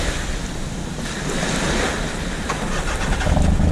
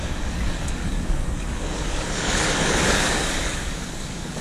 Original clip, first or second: first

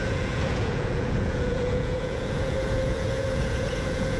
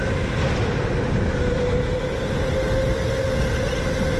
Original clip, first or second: second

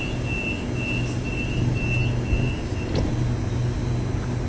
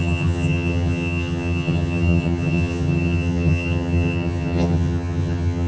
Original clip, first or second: first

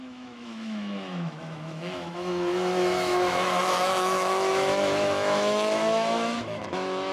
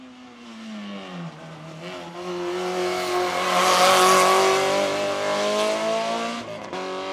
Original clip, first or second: second